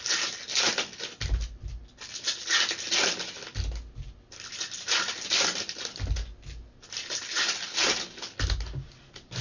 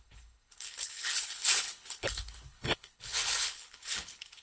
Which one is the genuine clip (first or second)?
first